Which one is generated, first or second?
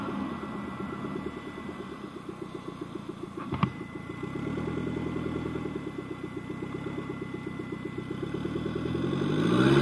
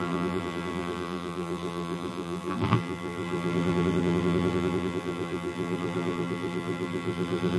second